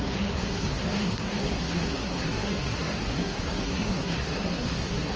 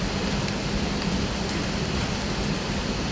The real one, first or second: second